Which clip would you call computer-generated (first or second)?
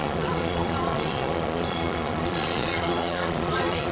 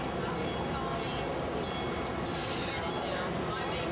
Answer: first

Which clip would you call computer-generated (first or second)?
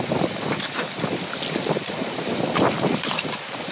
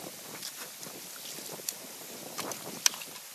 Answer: first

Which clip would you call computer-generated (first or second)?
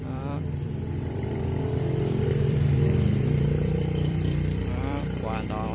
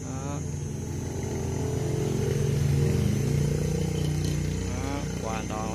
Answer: first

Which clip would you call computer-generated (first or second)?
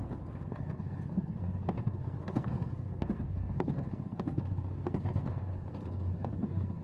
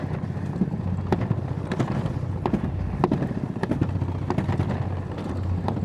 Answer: first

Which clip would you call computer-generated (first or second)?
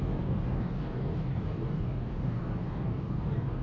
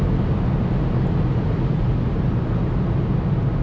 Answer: first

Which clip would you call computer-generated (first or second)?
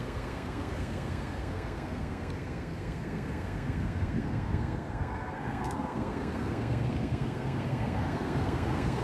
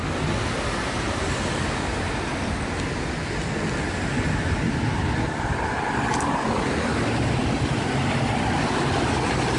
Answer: first